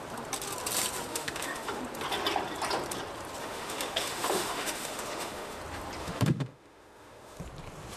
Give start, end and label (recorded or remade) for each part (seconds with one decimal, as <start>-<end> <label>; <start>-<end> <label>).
0.0-1.1 recorded; 1.1-1.8 remade; 1.8-3.4 recorded; 3.4-5.6 remade; 5.6-6.0 recorded; 6.0-7.4 remade; 7.4-8.0 recorded

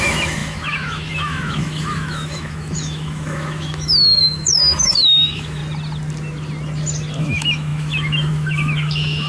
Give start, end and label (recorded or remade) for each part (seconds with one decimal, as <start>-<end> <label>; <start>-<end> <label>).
0.0-5.6 remade; 5.6-7.2 recorded; 7.2-9.3 remade

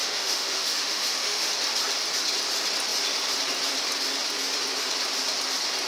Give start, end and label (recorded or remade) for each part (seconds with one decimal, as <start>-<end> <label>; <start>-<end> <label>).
0.0-1.5 remade; 1.5-5.9 recorded

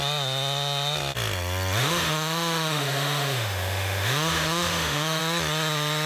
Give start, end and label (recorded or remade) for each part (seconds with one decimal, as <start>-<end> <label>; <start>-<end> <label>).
0.0-1.8 recorded; 1.8-5.2 remade; 5.2-6.1 recorded